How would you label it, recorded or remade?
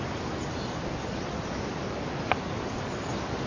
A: recorded